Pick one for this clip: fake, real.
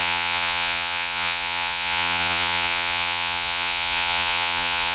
fake